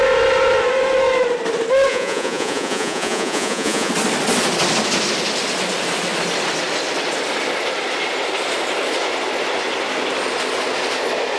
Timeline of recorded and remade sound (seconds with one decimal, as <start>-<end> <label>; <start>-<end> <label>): 0.0-1.9 recorded; 1.9-3.9 remade; 3.9-11.4 recorded